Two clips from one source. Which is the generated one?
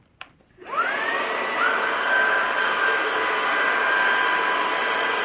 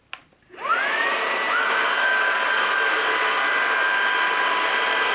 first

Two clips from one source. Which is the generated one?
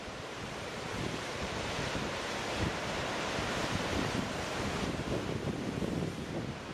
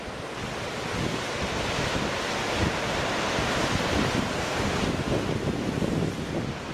first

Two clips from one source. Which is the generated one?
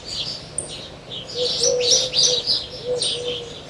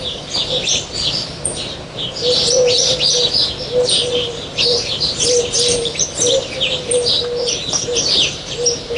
second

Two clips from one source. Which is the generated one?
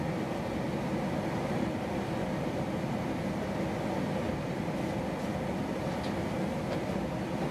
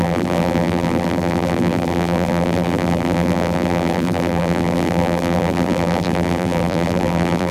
second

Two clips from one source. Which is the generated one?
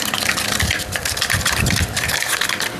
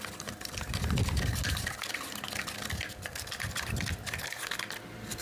first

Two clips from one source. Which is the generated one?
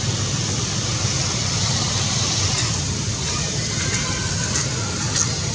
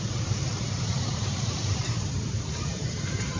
second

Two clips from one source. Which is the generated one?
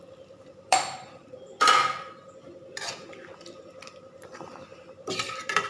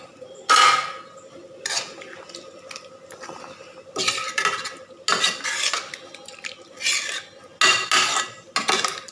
first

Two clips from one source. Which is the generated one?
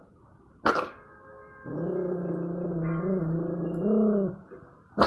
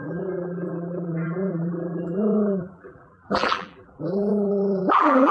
second